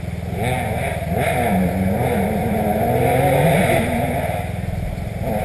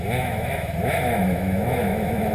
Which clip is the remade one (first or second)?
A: second